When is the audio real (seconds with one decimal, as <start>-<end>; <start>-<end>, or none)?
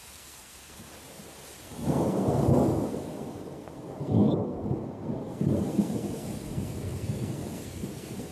0.9-1.6